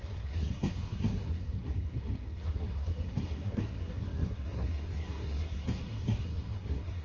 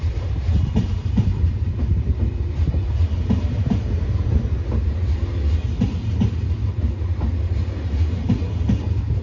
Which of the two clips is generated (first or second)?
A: first